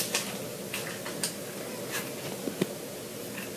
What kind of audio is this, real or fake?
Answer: real